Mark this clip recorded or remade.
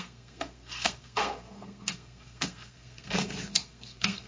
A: remade